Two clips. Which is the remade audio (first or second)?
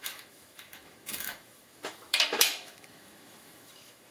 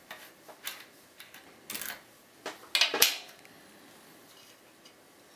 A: first